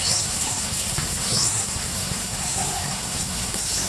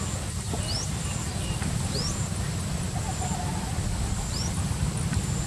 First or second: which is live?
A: second